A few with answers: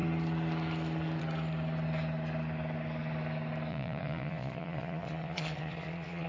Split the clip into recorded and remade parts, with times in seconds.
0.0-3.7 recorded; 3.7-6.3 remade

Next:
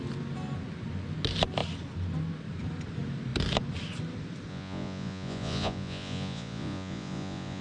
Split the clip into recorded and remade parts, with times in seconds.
0.0-4.5 recorded; 4.5-7.6 remade

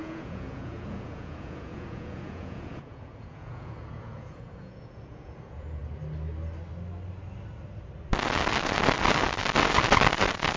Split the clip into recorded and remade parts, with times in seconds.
0.0-5.8 remade; 5.8-10.6 recorded

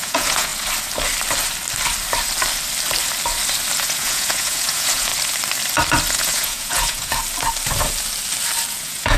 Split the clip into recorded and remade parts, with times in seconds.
0.0-0.5 remade; 0.5-3.8 recorded; 3.8-5.1 remade; 5.1-6.1 recorded; 6.1-7.2 remade; 7.2-8.7 recorded; 8.7-9.2 remade

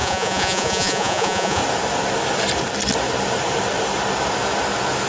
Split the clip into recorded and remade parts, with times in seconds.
0.0-1.6 remade; 1.6-5.1 recorded

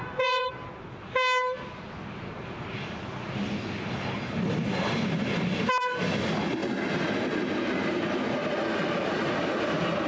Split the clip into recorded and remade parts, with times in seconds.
0.0-0.5 remade; 0.5-10.1 recorded

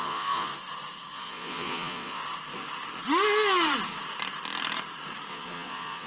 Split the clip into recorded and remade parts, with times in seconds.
0.0-0.5 remade; 0.5-1.1 recorded; 1.1-2.2 remade; 2.2-5.3 recorded; 5.3-6.1 remade